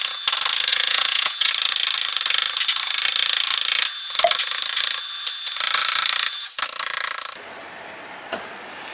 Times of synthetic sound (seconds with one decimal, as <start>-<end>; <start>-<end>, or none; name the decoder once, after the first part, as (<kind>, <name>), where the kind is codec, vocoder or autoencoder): 0.7-1.5 (vocoder, Vocos)